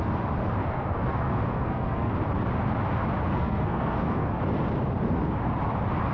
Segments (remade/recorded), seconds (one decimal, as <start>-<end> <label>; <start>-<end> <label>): 0.0-0.6 recorded; 0.6-2.1 remade; 2.1-3.3 recorded; 3.3-4.4 remade; 4.4-6.1 recorded